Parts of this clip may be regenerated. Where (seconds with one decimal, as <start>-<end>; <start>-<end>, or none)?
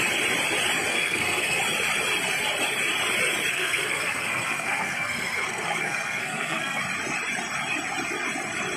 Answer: 0.9-1.6; 3.5-6.8